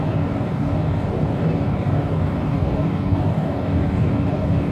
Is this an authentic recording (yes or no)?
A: no